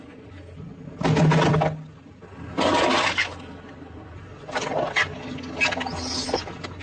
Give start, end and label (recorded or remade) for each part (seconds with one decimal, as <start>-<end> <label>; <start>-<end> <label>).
0.0-6.8 recorded